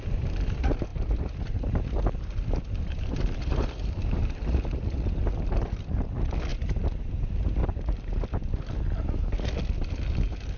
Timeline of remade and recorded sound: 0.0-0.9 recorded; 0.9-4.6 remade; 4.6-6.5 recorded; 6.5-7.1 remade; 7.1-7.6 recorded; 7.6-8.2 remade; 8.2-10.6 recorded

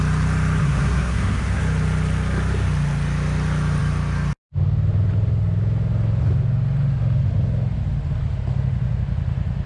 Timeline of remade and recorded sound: 0.0-0.6 recorded; 0.6-1.6 remade; 1.6-9.7 recorded